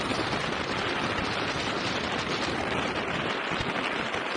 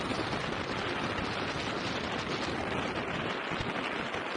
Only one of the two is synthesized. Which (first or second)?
first